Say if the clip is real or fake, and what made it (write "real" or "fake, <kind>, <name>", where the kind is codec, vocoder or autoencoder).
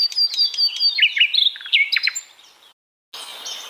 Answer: real